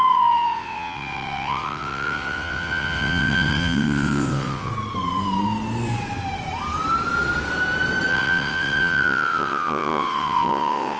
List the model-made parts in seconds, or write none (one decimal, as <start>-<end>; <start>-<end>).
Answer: 0.0-4.7; 8.1-11.0